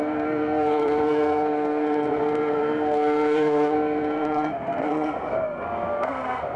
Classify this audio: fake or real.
fake